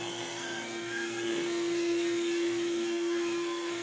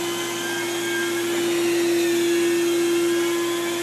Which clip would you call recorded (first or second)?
second